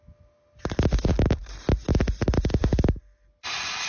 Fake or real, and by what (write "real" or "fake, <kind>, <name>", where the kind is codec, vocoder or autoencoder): real